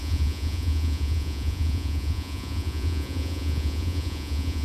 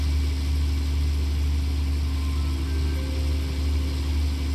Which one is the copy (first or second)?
first